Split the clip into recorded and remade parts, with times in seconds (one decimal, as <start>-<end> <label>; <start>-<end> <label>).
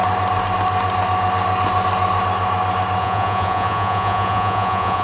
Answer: 0.0-3.0 recorded; 3.0-5.0 remade